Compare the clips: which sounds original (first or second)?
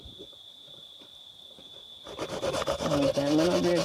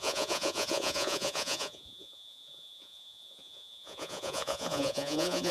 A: first